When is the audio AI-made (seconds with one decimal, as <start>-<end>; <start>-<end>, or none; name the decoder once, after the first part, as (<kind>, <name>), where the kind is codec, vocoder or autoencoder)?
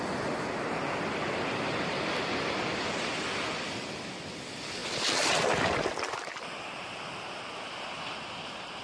none